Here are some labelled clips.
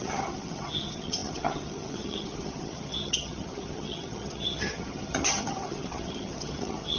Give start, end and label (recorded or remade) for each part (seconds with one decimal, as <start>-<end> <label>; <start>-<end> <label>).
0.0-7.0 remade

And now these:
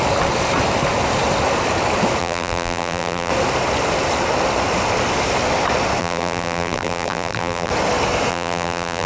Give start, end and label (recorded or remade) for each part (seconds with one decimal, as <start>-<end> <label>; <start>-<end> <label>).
0.0-2.2 recorded; 2.2-3.3 remade; 3.3-6.0 recorded; 6.0-7.7 remade; 7.7-8.3 recorded; 8.3-9.1 remade

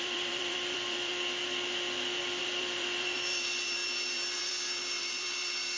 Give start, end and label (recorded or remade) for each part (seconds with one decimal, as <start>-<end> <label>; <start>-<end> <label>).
0.0-1.1 remade; 1.1-2.4 recorded; 2.4-5.8 remade

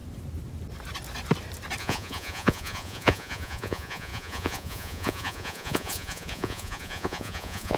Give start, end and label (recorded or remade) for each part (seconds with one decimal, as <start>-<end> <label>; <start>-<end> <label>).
0.0-1.8 recorded; 1.8-7.8 remade

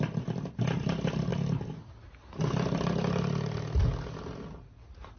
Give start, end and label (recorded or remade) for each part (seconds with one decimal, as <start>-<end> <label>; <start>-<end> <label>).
0.0-5.2 recorded

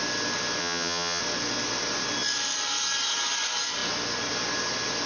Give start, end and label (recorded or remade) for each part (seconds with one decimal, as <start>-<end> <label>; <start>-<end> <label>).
0.0-0.6 recorded; 0.6-1.2 remade; 1.2-5.1 recorded